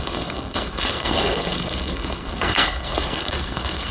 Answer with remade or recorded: remade